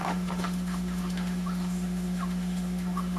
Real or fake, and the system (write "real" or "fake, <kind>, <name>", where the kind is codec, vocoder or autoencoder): fake, autoencoder, DAC-VAE